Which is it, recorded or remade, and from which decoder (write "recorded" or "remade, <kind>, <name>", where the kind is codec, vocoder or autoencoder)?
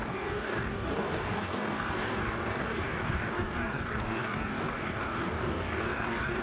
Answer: remade, codec, DAC